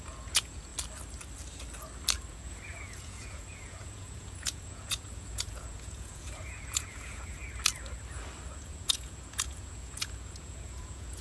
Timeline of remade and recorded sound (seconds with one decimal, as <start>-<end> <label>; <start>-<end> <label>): 0.0-0.7 remade; 0.7-2.3 recorded; 2.3-7.4 remade; 7.4-8.5 recorded; 8.5-11.2 remade